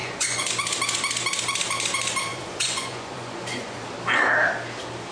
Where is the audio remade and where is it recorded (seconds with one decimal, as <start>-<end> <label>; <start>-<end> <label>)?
0.0-0.5 remade; 0.5-2.3 recorded; 2.3-3.8 remade; 3.8-5.1 recorded

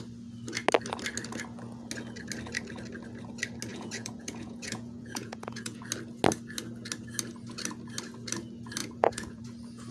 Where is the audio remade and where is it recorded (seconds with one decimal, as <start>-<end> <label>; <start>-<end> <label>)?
0.0-3.7 recorded; 3.7-5.8 remade; 5.8-8.8 recorded; 8.8-9.4 remade; 9.4-9.9 recorded

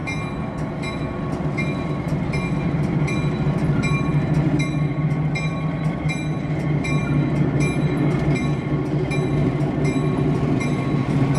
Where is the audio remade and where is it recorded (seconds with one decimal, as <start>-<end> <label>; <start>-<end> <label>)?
0.0-11.4 recorded

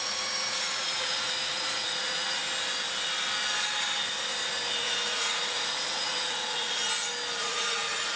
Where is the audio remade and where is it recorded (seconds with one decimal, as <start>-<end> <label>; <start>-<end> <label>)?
0.0-2.4 remade; 2.4-4.8 recorded; 4.8-6.8 remade; 6.8-7.4 recorded; 7.4-8.2 remade